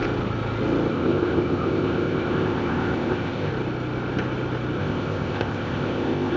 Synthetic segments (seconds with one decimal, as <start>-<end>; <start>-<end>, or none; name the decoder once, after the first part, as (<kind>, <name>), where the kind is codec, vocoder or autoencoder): 0.9-3.5 (codec, ZipCodec); 4.8-6.4